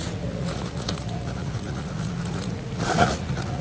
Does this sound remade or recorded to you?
remade